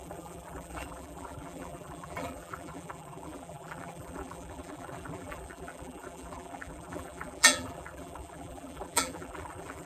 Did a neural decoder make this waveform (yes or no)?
yes